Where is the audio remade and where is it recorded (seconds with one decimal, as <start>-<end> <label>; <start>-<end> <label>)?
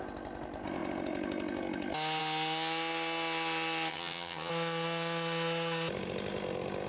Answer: 0.0-3.9 recorded; 3.9-4.5 remade; 4.5-6.9 recorded